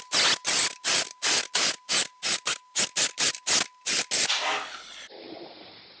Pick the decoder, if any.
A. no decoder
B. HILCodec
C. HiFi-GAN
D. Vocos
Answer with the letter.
A